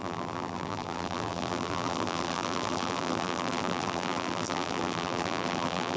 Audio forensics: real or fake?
fake